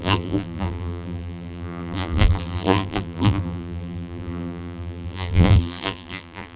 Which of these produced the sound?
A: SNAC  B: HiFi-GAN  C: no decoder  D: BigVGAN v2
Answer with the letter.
D